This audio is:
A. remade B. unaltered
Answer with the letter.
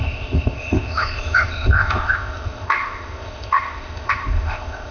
A